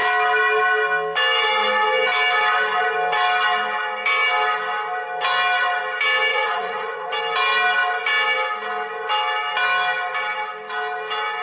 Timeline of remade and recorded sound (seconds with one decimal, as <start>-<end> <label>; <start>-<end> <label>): 0.0-6.3 recorded; 6.3-7.1 remade; 7.1-11.4 recorded